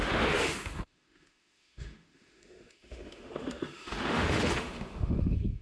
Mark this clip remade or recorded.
remade